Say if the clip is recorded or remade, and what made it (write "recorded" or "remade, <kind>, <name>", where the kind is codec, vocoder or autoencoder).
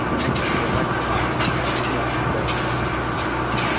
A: recorded